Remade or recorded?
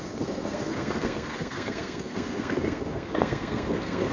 remade